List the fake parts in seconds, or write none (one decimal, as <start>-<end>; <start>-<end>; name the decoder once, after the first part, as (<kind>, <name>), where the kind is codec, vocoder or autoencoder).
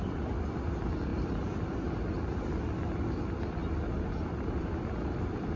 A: none